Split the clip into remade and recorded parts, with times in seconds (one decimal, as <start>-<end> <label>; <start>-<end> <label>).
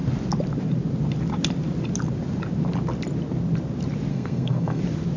0.0-4.1 recorded; 4.1-4.8 remade; 4.8-5.2 recorded